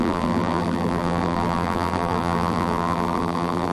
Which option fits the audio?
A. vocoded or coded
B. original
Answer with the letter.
A